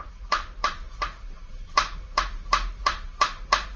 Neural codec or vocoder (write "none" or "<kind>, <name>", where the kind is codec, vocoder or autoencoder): vocoder, BigVGAN v2